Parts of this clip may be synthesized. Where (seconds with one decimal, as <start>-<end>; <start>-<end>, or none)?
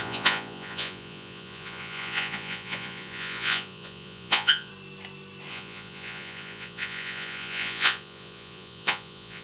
0.0-4.7; 5.5-9.4